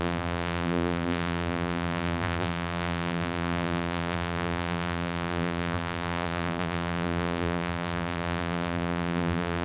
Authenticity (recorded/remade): remade